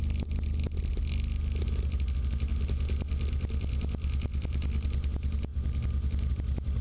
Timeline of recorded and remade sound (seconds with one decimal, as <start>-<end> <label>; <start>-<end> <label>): 0.0-6.8 recorded